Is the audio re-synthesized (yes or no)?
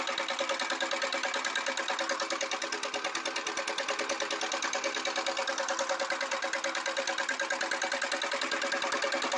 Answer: no